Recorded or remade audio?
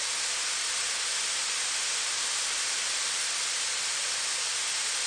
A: recorded